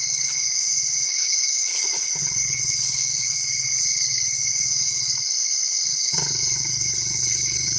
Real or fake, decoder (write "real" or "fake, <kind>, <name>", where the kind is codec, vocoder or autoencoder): fake, codec, HILCodec